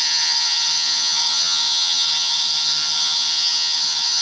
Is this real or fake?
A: fake